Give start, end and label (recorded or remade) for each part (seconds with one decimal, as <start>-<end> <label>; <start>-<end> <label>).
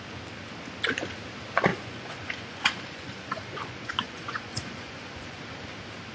0.0-1.7 recorded; 1.7-5.4 remade; 5.4-6.1 recorded